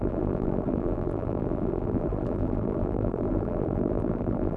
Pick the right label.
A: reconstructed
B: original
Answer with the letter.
A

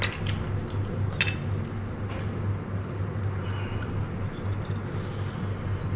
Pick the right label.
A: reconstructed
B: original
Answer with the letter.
B